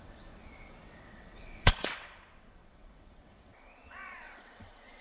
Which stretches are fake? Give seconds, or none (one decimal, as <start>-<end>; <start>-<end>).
0.0-5.0